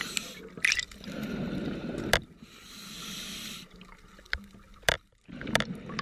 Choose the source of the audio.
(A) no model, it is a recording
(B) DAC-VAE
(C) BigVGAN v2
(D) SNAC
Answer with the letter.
A